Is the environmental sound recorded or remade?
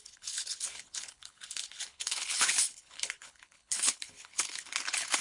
remade